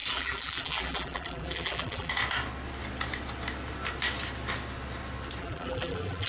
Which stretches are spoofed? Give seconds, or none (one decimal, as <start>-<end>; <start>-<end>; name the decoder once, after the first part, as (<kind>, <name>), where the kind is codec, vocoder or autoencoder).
0.0-2.1 (vocoder, BigVGAN v2); 5.4-6.3